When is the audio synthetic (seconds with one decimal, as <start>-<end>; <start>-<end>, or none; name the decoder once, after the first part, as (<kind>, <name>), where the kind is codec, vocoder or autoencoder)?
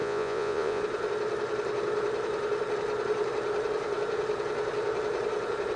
0.0-0.8 (vocoder, Vocos)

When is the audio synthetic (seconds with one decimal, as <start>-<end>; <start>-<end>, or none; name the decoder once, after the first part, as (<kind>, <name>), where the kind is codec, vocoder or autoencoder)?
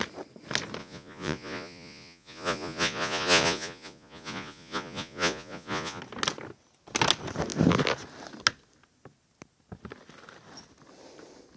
0.8-6.0 (vocoder, Vocos)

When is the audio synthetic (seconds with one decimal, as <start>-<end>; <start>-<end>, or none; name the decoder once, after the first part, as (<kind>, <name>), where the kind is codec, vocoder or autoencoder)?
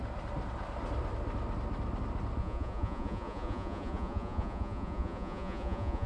2.4-6.1 (vocoder, Vocos)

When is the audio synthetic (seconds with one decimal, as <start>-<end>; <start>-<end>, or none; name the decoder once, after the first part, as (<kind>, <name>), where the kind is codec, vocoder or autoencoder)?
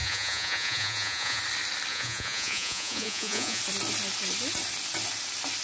0.0-1.4 (vocoder, Vocos); 1.9-3.6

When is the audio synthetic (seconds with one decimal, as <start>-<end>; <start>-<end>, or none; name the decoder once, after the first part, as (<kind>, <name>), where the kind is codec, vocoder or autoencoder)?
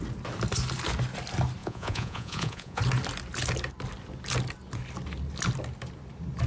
1.6-2.8 (vocoder, Vocos)